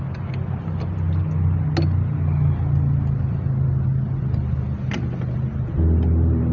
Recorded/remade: recorded